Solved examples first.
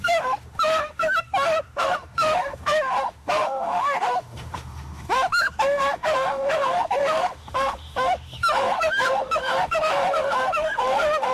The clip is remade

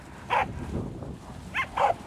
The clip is recorded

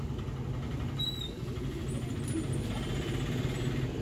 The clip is recorded